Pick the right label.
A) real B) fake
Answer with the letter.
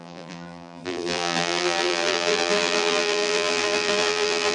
B